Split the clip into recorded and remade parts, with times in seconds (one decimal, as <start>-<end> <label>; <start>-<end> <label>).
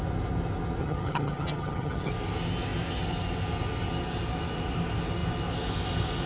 0.0-0.8 recorded; 0.8-2.1 remade; 2.1-6.3 recorded